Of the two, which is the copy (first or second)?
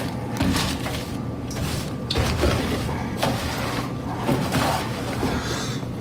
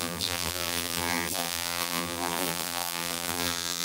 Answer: second